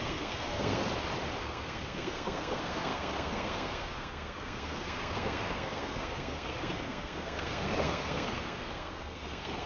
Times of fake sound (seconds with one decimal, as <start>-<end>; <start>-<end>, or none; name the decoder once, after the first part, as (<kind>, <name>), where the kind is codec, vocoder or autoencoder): 0.0-0.8 (codec, SNAC); 1.4-9.7